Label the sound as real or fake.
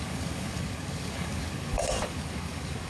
fake